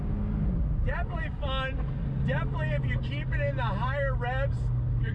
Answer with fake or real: real